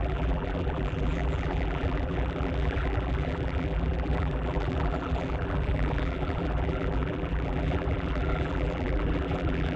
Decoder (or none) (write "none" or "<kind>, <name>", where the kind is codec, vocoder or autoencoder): vocoder, BigVGAN v2